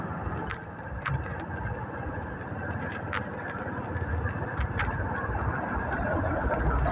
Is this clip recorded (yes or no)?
yes